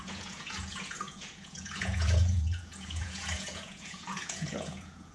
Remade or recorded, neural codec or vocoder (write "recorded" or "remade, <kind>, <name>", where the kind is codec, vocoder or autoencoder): remade, vocoder, Vocos